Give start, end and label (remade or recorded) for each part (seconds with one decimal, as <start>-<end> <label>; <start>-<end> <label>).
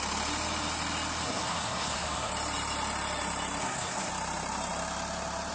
0.0-1.2 recorded; 1.2-2.3 remade; 2.3-3.6 recorded; 3.6-4.1 remade; 4.1-5.5 recorded